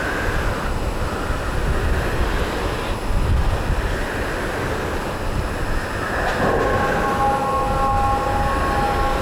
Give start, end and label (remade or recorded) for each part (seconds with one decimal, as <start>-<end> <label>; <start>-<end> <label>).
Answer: 0.0-9.2 recorded